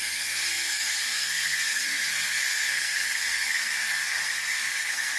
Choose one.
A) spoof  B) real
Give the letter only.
A